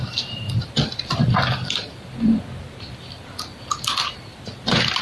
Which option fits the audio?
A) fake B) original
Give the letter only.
A